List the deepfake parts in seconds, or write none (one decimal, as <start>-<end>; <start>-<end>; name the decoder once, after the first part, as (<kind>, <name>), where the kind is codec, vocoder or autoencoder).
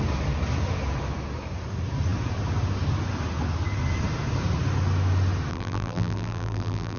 5.5-7.0 (vocoder, BigVGAN v2)